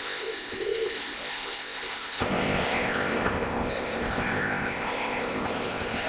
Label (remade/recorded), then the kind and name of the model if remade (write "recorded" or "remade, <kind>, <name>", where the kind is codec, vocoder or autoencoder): remade, codec, ZipCodec